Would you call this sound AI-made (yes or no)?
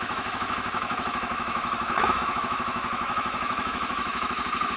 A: yes